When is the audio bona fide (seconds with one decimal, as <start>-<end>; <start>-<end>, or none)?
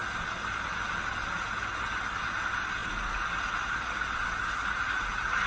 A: 0.0-5.5